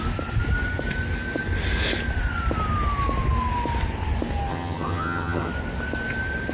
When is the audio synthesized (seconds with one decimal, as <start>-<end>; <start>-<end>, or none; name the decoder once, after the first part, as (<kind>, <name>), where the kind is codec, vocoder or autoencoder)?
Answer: 4.5-5.5 (vocoder, HiFi-GAN)

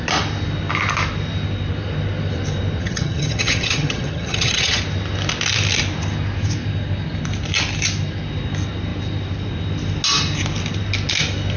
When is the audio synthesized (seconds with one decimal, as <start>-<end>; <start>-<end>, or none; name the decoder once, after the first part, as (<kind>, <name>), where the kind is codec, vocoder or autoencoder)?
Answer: 2.8-4.8 (vocoder, HiFi-GAN)

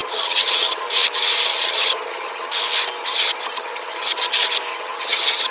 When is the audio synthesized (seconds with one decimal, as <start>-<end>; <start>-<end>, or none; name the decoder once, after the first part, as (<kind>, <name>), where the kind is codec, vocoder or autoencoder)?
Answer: 0.0-0.8 (vocoder, HiFi-GAN); 1.5-2.6; 3.0-4.3; 4.7-5.5

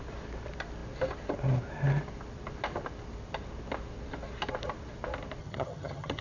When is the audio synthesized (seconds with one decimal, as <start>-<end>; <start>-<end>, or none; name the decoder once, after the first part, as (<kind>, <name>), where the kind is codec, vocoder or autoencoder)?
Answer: 5.4-6.2 (vocoder, HiFi-GAN)

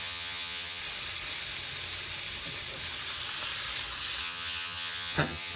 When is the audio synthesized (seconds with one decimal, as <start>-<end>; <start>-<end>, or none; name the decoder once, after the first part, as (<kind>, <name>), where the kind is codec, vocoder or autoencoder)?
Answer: 0.0-0.8 (vocoder, HiFi-GAN); 4.2-5.6

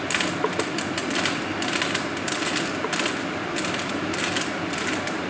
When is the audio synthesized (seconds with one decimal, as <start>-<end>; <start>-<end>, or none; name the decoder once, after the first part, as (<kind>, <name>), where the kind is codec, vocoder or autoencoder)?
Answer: none